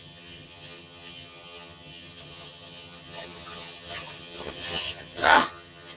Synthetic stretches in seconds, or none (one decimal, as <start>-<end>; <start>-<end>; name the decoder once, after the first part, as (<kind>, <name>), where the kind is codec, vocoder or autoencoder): 0.0-6.0 (vocoder, HiFi-GAN)